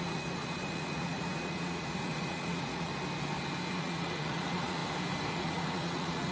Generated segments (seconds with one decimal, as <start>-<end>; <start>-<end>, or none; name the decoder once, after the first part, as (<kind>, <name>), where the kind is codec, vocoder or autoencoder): 0.0-2.9 (vocoder, Vocos); 3.7-4.8; 5.3-6.3